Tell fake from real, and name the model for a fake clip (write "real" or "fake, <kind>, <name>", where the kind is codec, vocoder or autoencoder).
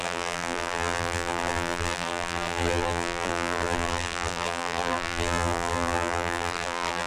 fake, vocoder, BigVGAN v2